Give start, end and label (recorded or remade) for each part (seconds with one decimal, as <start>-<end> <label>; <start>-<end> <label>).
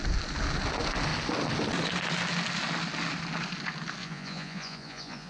0.0-4.0 recorded; 4.0-5.3 remade